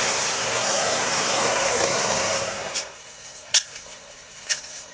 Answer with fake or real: fake